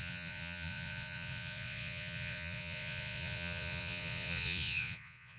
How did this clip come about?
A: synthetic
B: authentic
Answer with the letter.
A